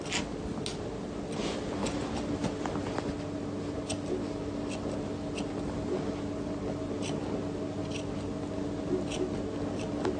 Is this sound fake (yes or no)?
no